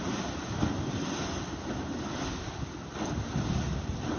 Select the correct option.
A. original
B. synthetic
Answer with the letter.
A